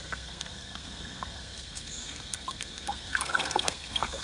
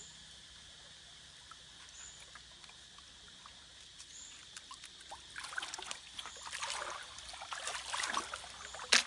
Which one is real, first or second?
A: second